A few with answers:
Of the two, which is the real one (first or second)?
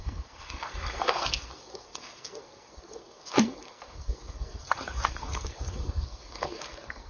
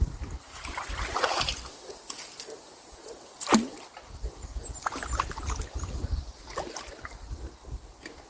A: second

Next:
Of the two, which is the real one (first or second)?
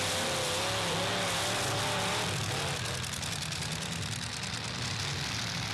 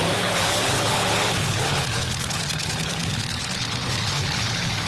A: first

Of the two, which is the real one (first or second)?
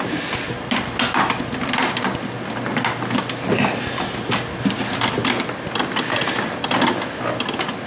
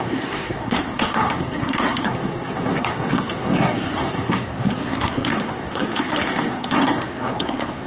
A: first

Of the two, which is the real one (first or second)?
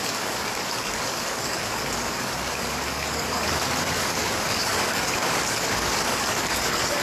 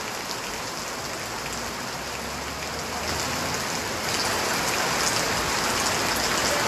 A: second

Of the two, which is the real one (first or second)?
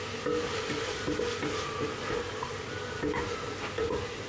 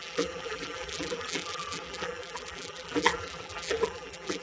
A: first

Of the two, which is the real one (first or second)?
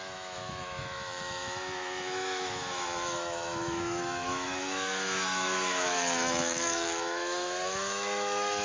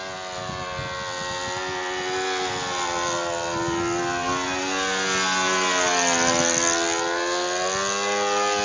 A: second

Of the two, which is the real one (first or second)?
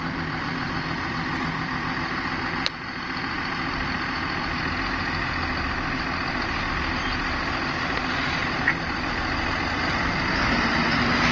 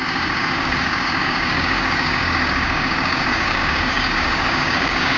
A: first